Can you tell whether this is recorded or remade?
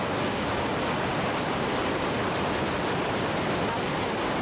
recorded